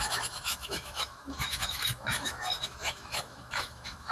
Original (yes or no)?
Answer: no